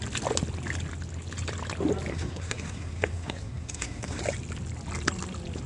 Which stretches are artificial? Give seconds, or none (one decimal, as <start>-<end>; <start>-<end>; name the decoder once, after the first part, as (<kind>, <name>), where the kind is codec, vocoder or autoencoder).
2.1-4.2 (codec, SNAC)